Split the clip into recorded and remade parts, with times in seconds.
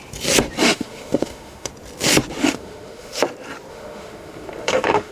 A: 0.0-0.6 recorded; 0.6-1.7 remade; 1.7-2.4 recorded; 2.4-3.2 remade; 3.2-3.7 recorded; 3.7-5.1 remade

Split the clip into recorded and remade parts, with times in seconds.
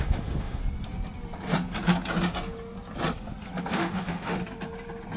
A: 0.0-0.6 remade; 0.6-3.7 recorded; 3.7-4.4 remade; 4.4-5.2 recorded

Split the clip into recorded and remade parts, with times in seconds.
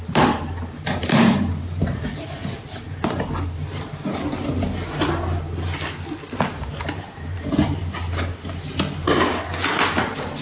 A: 0.0-2.4 remade; 2.4-6.6 recorded; 6.6-7.8 remade; 7.8-9.9 recorded; 9.9-10.4 remade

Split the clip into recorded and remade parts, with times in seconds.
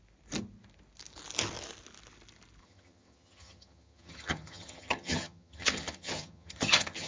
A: 0.0-2.6 recorded; 2.6-7.1 remade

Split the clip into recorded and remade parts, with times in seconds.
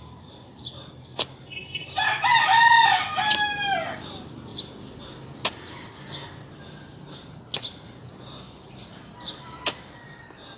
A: 0.0-1.6 recorded; 1.6-2.6 remade; 2.6-10.6 recorded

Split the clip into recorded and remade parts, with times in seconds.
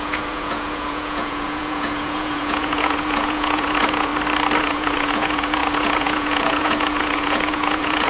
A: 0.0-4.1 remade; 4.1-4.6 recorded; 4.6-8.1 remade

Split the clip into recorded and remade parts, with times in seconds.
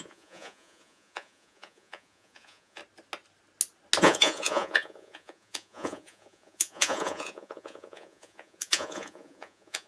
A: 0.0-2.8 remade; 2.8-4.0 recorded; 4.0-9.9 remade